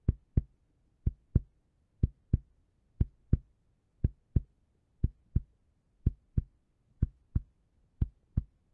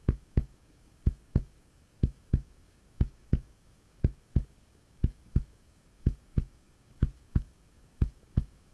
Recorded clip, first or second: first